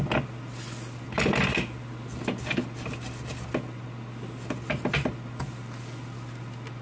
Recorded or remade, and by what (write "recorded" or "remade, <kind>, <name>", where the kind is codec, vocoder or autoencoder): recorded